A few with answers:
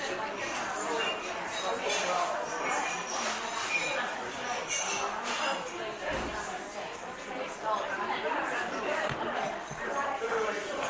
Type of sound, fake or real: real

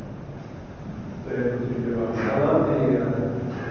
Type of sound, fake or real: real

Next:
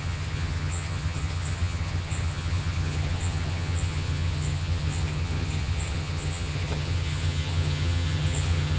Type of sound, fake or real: fake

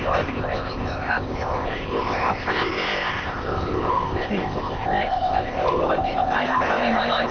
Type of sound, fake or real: fake